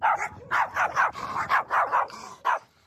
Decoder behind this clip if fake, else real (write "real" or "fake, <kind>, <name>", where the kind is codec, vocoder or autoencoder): fake, vocoder, BigVGAN v2